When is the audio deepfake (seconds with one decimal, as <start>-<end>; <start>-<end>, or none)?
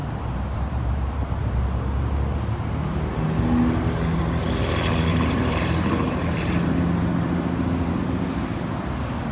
0.0-1.6; 5.1-6.8